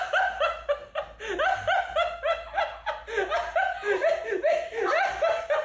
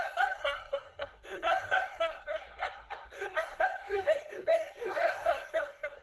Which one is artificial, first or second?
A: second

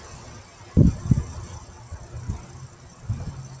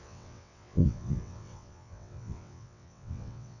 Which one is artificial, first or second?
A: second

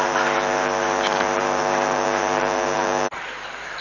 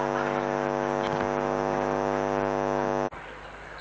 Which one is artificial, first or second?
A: first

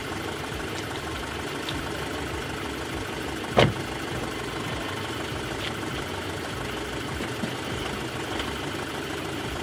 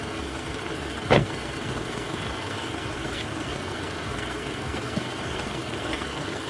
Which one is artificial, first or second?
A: second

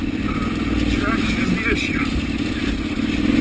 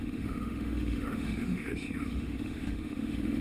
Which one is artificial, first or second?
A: second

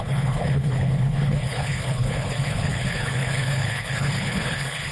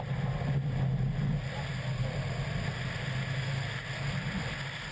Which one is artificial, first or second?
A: first